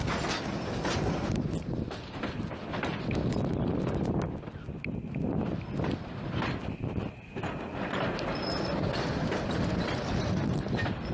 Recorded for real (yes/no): yes